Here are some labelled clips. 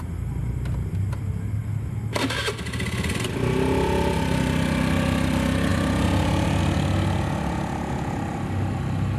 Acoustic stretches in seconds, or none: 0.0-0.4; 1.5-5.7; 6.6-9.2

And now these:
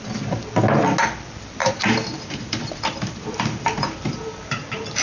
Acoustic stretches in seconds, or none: 0.0-1.6; 4.6-5.0

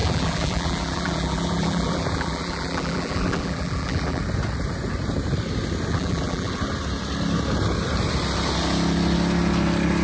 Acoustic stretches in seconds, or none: 4.2-5.9; 6.5-10.0

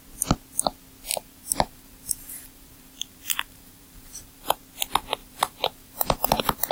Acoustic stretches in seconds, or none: 0.0-1.1; 4.6-5.2

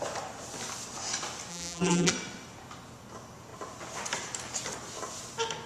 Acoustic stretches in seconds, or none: 0.0-1.5; 2.1-5.7